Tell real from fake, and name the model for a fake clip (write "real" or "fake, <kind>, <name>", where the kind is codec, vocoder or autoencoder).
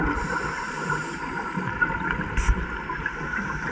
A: real